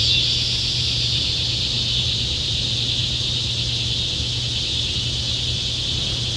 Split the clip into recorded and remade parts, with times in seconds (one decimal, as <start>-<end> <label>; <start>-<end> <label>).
0.0-6.4 recorded